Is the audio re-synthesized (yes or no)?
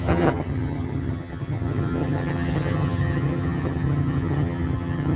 yes